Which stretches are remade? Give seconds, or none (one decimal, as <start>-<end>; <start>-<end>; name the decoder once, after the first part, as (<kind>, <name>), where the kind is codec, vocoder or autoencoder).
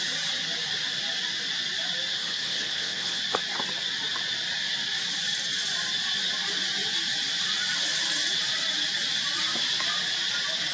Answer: 2.2-3.2 (codec, HILCodec)